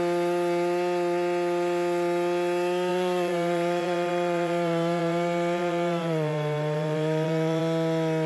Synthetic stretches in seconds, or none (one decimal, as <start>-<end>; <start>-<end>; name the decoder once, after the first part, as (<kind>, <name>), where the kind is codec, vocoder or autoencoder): 2.9-7.6 (vocoder, BigVGAN v2)